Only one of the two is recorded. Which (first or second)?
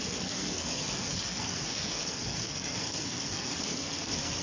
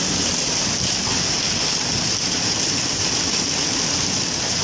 second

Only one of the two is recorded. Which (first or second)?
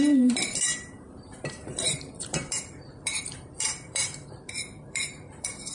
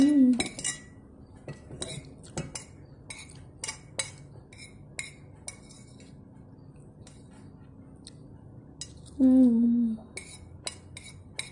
second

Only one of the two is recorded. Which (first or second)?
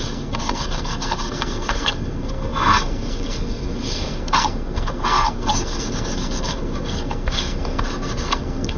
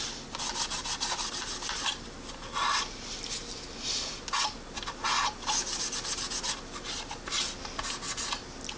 second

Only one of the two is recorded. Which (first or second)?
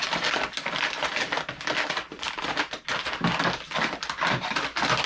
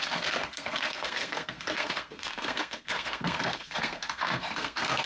first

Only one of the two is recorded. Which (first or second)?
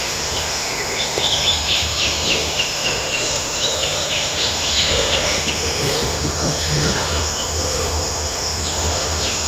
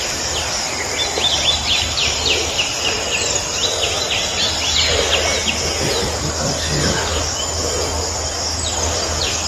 second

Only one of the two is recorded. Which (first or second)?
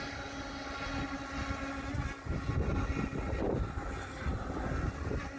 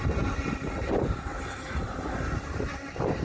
first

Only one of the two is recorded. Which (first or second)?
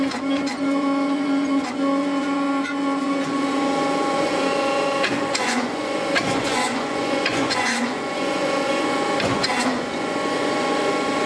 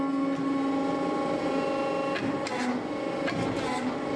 second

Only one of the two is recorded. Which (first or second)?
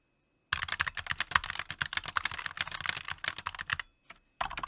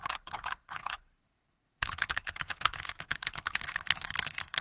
first